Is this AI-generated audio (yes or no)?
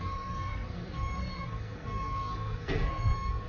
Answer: yes